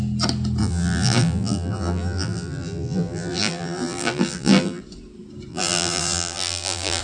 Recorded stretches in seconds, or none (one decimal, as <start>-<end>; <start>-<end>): 0.0-0.6; 4.8-5.5